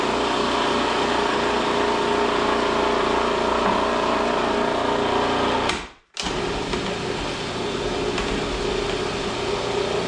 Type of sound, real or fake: real